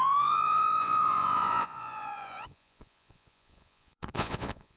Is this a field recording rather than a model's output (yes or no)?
no